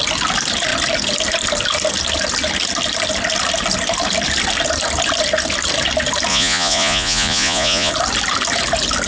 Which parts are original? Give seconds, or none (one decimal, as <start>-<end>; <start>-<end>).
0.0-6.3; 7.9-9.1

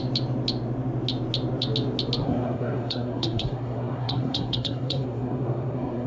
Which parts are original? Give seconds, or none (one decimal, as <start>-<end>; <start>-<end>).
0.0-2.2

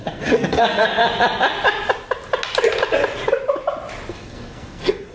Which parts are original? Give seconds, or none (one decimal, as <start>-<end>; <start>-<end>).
1.0-4.1

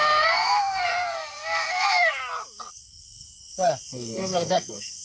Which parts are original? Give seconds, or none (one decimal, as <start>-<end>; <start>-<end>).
2.2-2.7

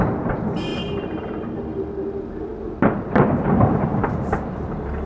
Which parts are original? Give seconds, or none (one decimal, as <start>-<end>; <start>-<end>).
0.0-0.7; 1.6-2.5